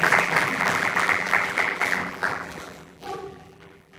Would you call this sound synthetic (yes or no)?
yes